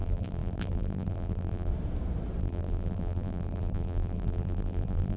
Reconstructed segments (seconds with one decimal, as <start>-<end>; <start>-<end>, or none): 0.0-1.7; 2.4-5.2